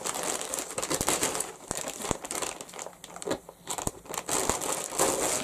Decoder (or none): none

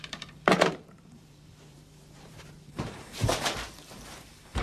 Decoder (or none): vocoder, BigVGAN v2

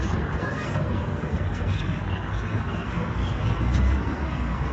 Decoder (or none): codec, SNAC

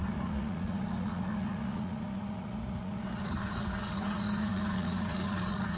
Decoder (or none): vocoder, Vocos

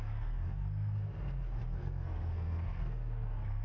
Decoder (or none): codec, SNAC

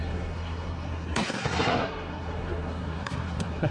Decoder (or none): codec, SNAC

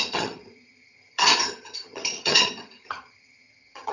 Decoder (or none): vocoder, HiFi-GAN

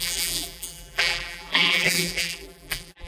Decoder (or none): vocoder, BigVGAN v2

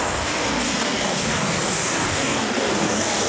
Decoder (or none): codec, DAC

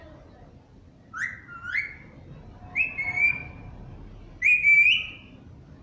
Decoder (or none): none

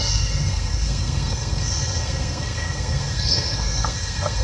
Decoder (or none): codec, SNAC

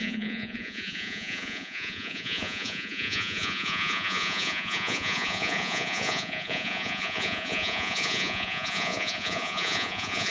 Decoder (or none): vocoder, Vocos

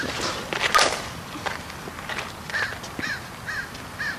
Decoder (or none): none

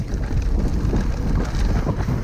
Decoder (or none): none